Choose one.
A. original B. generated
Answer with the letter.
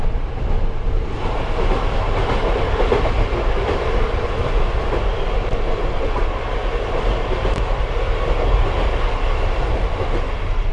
A